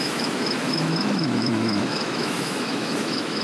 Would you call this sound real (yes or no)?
no